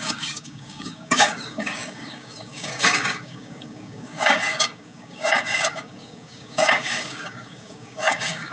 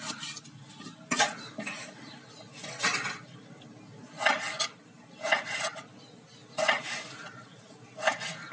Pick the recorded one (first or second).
second